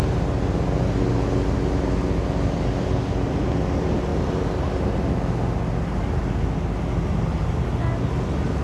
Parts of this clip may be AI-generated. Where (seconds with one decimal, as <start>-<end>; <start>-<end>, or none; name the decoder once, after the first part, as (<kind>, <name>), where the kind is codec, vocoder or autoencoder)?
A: none